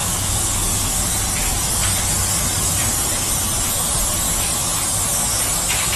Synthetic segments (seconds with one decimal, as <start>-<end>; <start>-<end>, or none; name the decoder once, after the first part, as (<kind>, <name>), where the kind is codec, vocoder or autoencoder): 0.0-1.1 (codec, DAC)